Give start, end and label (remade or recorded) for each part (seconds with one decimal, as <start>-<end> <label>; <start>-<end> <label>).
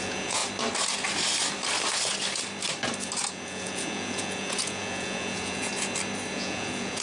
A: 0.0-0.4 remade; 0.4-3.3 recorded; 3.3-5.7 remade; 5.7-6.3 recorded; 6.3-7.0 remade